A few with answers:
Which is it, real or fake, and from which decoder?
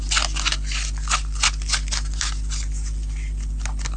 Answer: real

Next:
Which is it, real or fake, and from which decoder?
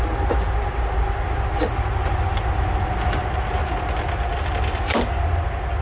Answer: real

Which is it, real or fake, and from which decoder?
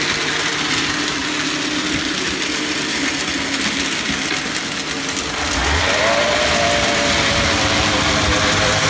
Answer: real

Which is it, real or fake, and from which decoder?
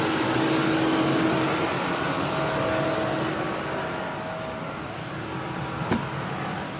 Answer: real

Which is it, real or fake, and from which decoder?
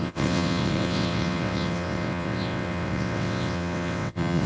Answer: fake, vocoder, WaveNeXt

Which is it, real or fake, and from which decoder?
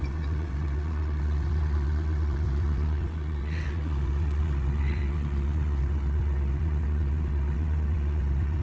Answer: fake, vocoder, WaveNeXt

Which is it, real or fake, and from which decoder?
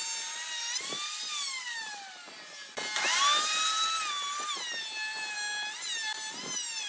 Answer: real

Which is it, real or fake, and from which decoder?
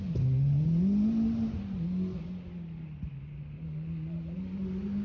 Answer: real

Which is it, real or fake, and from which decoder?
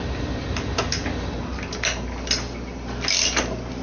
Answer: real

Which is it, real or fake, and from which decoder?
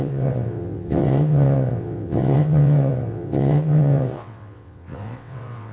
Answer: fake, vocoder, WaveNeXt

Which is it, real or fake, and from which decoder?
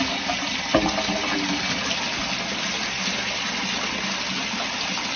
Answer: real